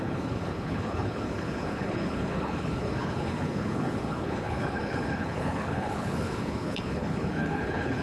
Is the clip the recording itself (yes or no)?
no